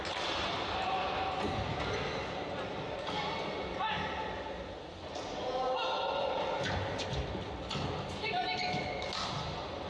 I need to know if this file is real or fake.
real